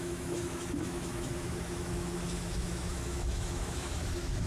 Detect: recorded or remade remade